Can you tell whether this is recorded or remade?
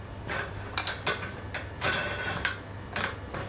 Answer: recorded